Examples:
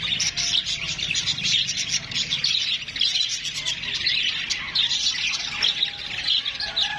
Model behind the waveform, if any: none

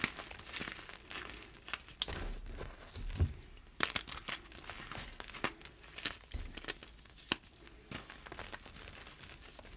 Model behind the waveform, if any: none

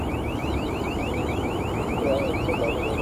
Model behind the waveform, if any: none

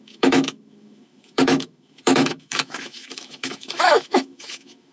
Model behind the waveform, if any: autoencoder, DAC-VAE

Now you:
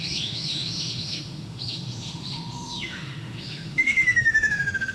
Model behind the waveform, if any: autoencoder, DAC-VAE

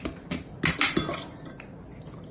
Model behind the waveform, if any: none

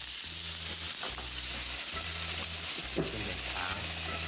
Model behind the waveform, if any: none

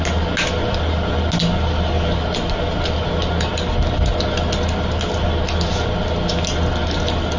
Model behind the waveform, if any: none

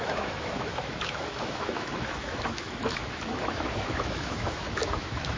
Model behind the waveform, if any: autoencoder, DAC-VAE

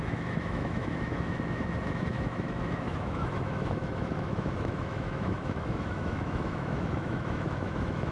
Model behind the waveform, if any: autoencoder, DAC-VAE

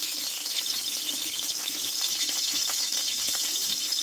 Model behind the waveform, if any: autoencoder, DAC-VAE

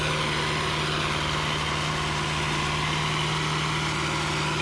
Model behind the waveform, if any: none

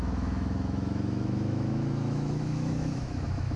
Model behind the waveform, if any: autoencoder, DAC-VAE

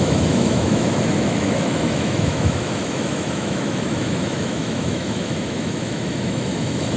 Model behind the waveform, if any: autoencoder, DAC-VAE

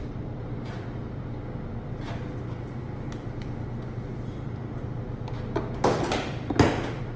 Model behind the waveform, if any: none